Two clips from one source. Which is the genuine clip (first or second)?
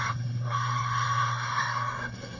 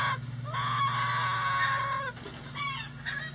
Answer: second